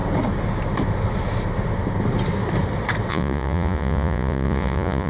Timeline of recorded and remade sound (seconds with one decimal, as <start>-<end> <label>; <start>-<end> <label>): 0.0-3.1 recorded; 3.1-5.1 remade